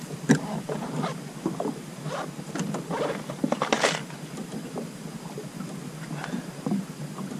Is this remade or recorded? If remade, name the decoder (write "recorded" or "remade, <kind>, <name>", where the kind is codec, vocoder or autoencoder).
remade, vocoder, BigVGAN v2